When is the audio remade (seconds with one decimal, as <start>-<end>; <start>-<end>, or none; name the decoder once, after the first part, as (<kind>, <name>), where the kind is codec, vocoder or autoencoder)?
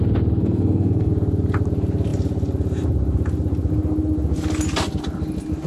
0.4-1.1 (codec, SNAC)